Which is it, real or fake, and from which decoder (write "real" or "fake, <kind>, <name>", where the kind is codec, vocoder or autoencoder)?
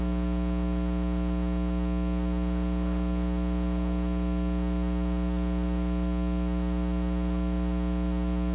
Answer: real